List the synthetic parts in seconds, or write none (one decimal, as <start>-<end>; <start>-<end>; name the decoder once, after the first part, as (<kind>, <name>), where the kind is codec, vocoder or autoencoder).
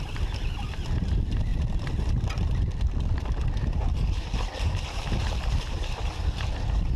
none